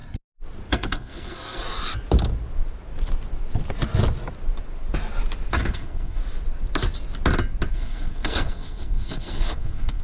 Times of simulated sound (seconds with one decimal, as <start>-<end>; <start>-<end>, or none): 0.7-1.6; 5.5-6.2; 7.7-10.0